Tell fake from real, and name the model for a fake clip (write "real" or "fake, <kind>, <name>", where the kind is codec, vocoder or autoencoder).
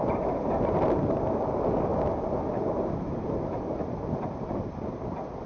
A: real